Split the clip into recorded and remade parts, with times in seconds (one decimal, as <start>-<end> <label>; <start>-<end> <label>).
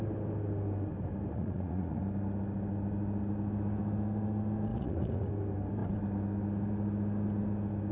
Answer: 0.0-1.3 recorded; 1.3-2.0 remade; 2.0-4.7 recorded; 4.7-5.3 remade; 5.3-7.9 recorded